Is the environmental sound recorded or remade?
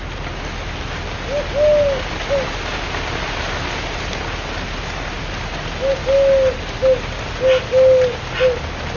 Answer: recorded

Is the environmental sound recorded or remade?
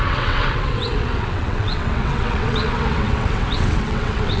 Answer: remade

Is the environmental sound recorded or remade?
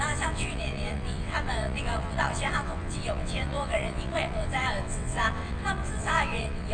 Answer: remade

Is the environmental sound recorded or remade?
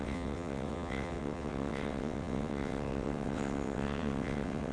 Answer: remade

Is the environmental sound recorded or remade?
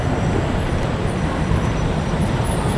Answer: recorded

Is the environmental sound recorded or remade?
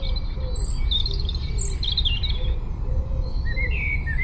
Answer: recorded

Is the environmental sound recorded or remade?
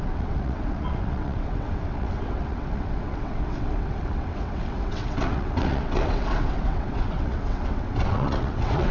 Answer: remade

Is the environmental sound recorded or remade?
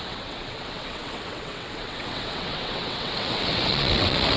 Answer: remade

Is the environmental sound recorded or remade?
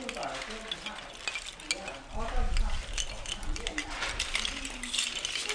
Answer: recorded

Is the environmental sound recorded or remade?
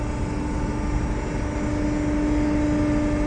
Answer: recorded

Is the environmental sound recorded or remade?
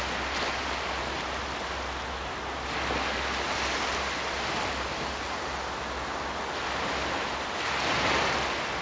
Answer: recorded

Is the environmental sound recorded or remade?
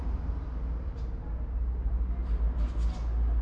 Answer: recorded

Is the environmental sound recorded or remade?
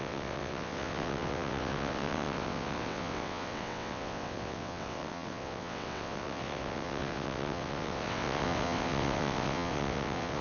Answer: remade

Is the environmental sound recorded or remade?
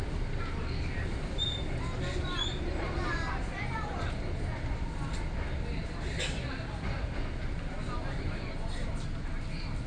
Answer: recorded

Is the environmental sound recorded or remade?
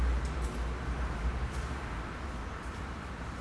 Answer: recorded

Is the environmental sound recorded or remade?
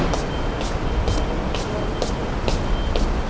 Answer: recorded